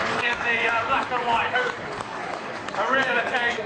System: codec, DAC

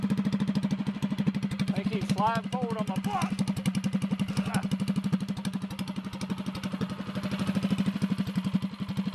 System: none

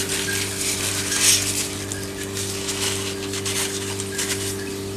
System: none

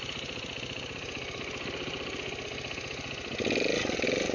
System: none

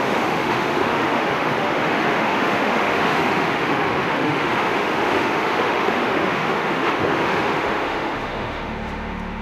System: autoencoder, DAC-VAE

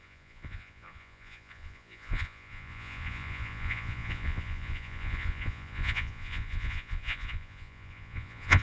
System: vocoder, Vocos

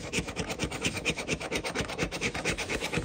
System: autoencoder, DAC-VAE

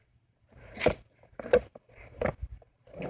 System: vocoder, BigVGAN v2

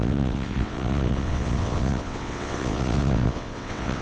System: vocoder, WaveNeXt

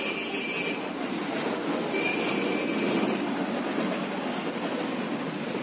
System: none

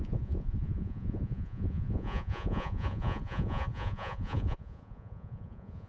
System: vocoder, Vocos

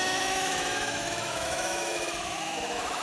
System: autoencoder, DAC-VAE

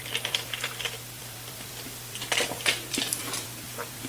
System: vocoder, BigVGAN v2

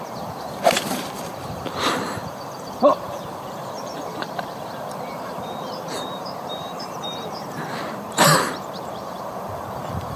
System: vocoder, BigVGAN v2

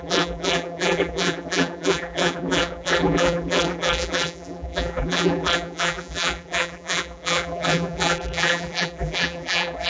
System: vocoder, BigVGAN v2